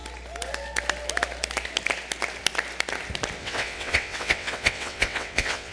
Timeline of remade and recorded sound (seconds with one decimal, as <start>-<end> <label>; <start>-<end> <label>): 0.0-3.4 recorded; 3.4-5.7 remade